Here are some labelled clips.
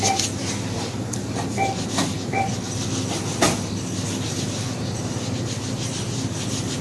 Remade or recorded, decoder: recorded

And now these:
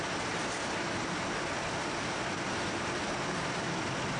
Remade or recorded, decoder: recorded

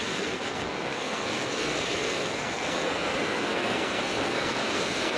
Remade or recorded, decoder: remade, codec, SNAC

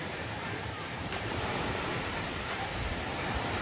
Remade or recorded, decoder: remade, vocoder, BigVGAN v2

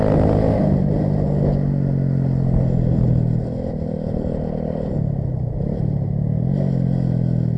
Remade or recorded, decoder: recorded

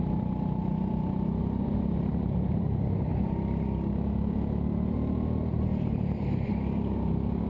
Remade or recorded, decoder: recorded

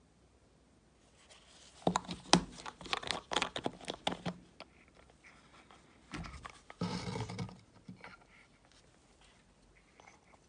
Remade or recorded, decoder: recorded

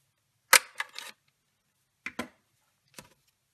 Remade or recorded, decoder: recorded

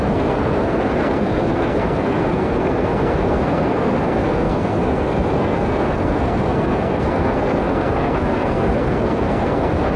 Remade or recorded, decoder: remade, codec, SNAC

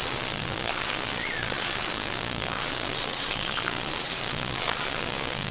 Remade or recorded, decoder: remade, vocoder, Vocos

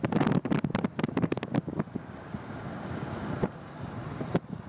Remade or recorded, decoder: recorded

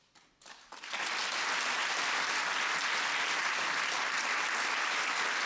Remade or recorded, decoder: recorded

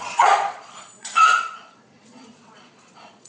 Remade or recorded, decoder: remade, vocoder, Vocos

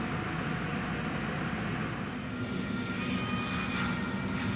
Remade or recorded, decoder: recorded